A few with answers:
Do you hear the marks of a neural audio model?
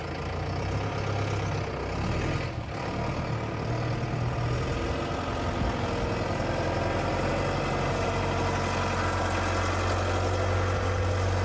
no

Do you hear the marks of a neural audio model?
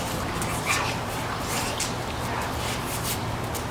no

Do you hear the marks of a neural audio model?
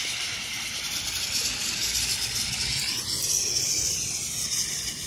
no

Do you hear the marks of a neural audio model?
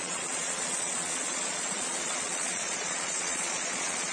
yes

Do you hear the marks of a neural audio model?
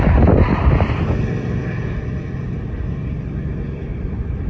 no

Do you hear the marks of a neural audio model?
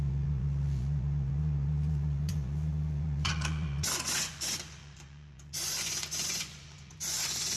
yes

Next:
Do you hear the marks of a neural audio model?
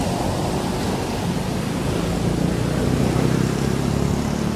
no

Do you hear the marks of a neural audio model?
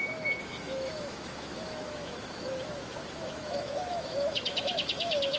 yes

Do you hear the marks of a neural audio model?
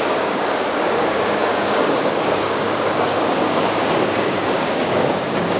yes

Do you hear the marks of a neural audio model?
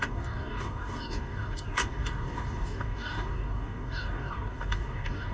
yes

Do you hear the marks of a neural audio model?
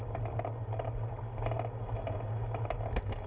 no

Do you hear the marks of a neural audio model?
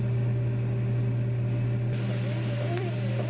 no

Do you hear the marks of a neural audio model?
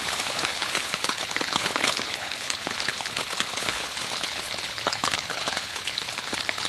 yes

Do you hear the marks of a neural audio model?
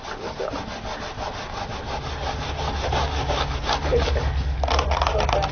no